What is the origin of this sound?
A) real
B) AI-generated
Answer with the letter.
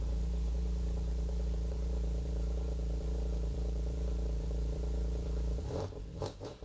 B